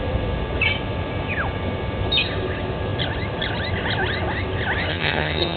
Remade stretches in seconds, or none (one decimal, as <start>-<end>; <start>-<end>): 4.9-5.6